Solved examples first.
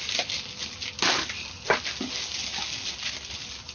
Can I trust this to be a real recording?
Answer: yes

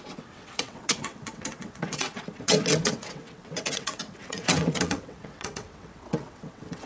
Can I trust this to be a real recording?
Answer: no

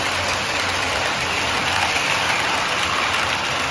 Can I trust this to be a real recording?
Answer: yes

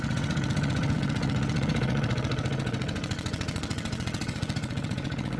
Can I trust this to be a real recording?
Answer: no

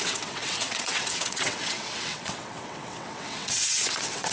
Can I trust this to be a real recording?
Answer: no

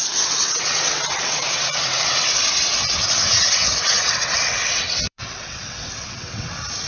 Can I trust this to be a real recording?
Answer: no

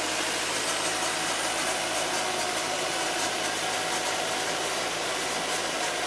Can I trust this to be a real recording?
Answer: yes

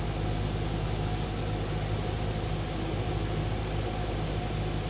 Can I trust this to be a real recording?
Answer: yes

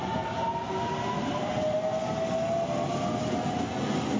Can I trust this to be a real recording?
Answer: yes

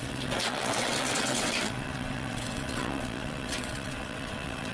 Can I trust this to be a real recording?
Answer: no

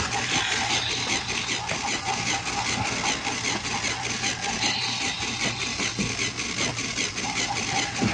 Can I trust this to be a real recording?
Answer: yes